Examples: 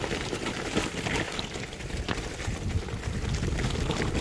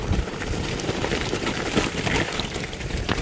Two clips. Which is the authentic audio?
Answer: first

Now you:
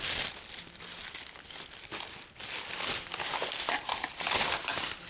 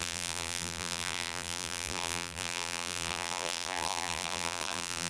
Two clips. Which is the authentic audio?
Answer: first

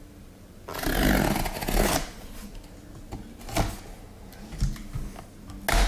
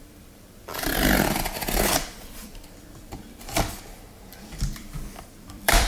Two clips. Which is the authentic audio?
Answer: first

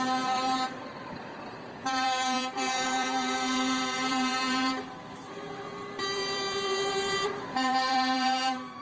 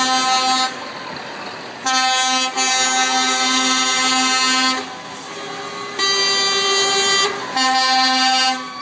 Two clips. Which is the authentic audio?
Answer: second